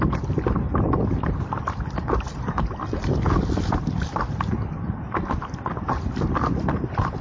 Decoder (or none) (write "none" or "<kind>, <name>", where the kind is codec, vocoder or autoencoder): none